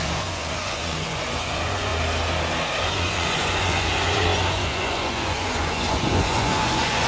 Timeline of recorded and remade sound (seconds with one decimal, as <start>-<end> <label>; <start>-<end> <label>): 0.0-1.9 remade; 1.9-2.8 recorded; 2.8-7.1 remade

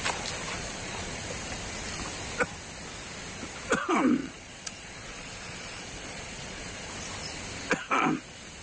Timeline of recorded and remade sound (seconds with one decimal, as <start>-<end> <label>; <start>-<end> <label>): 0.0-0.5 recorded; 0.5-1.2 remade; 1.2-4.2 recorded; 4.2-6.9 remade; 6.9-8.6 recorded